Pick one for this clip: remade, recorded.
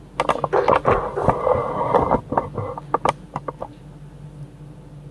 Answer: recorded